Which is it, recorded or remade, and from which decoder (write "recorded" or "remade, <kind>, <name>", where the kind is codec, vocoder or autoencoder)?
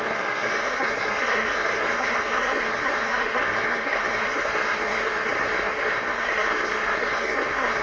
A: remade, codec, SNAC